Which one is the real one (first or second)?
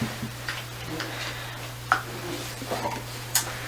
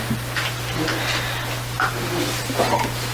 second